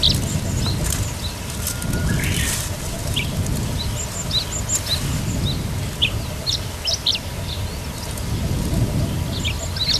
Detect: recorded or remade recorded